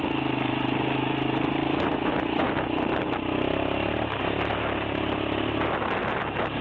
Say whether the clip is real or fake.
real